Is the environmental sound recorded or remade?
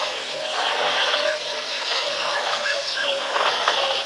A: remade